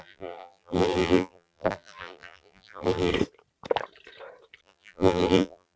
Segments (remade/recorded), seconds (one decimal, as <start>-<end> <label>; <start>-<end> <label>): 0.0-3.1 remade; 3.1-4.6 recorded; 4.6-5.8 remade